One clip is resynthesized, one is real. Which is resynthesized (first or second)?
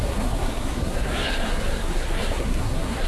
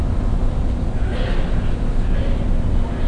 first